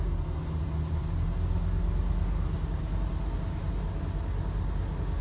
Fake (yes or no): no